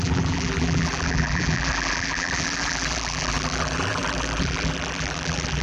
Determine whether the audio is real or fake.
fake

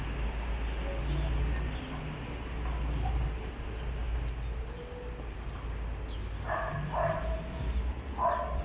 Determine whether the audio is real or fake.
real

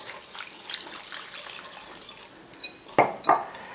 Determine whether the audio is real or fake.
real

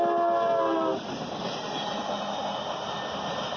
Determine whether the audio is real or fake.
real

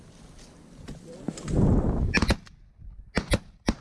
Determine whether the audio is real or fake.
real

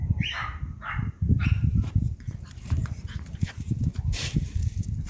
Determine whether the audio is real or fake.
fake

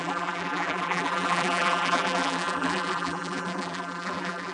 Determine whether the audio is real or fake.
fake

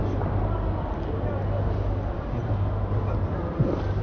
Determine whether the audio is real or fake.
real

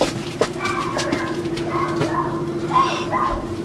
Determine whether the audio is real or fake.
fake